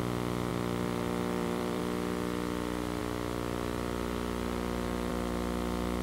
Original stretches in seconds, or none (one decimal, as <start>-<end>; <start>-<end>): 0.0-0.5; 1.8-3.0; 5.1-6.0